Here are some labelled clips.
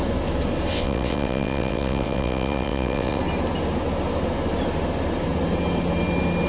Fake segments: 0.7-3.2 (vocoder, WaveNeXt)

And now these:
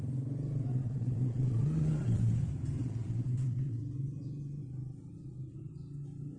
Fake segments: 0.7-2.3 (vocoder, Vocos); 2.8-3.8

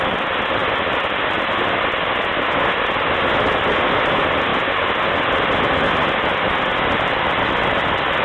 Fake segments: 6.7-7.6 (vocoder, BigVGAN v2)